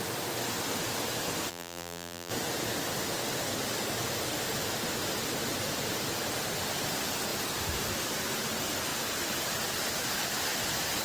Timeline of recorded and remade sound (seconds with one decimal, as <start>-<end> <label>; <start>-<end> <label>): 0.0-1.5 recorded; 1.5-2.3 remade; 2.3-11.0 recorded